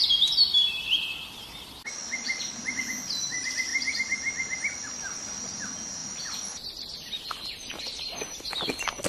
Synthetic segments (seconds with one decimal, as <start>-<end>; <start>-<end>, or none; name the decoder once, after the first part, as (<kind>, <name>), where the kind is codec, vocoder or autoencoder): none

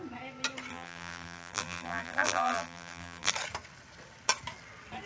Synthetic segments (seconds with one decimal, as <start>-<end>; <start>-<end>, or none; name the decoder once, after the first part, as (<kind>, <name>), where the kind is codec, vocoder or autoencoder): 0.7-3.3 (vocoder, BigVGAN v2)

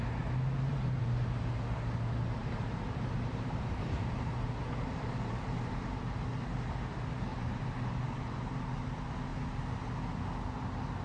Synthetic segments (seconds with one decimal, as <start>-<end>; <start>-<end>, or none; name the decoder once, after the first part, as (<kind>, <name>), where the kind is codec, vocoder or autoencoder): 0.7-1.4 (vocoder, BigVGAN v2); 2.4-6.3; 7.3-8.6

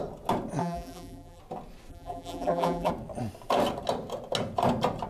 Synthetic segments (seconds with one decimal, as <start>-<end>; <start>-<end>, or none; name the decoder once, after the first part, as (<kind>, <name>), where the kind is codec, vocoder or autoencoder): 0.6-1.4 (vocoder, BigVGAN v2); 1.9-2.9

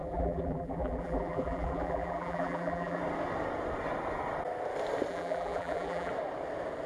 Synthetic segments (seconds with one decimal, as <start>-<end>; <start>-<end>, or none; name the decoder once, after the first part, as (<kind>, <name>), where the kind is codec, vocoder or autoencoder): 0.0-3.0 (vocoder, BigVGAN v2); 5.1-6.1

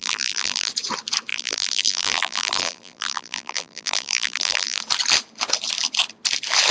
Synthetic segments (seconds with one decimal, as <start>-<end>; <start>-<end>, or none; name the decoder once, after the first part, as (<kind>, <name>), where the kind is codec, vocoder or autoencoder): 0.0-0.7 (vocoder, BigVGAN v2); 1.3-4.8

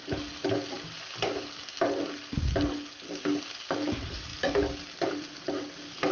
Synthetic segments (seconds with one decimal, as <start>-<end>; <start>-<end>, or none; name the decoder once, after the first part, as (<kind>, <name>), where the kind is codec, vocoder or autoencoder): 4.3-5.6 (vocoder, BigVGAN v2)